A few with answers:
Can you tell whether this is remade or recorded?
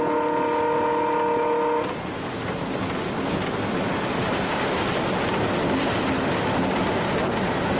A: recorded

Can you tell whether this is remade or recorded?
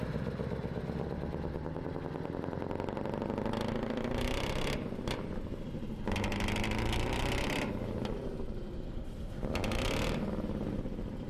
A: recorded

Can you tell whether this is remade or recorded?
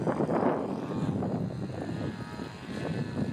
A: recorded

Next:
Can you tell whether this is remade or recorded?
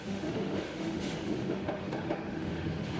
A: remade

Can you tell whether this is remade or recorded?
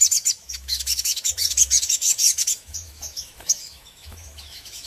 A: remade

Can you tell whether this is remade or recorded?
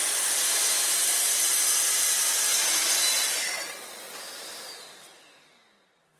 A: recorded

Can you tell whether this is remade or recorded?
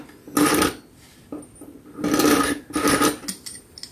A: recorded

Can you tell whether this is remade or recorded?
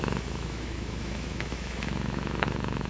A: remade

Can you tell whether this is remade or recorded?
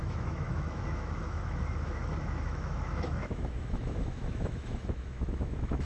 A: remade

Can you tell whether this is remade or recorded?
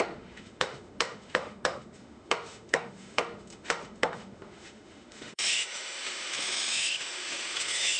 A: remade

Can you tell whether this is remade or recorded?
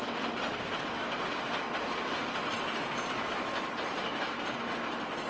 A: recorded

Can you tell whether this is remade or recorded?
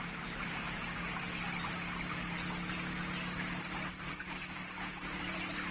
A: recorded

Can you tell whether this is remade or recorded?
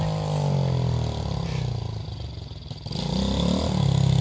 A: recorded